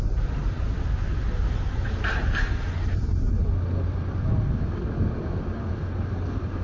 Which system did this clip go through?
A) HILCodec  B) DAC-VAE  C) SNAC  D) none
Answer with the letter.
D